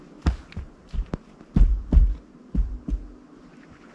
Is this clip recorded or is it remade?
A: recorded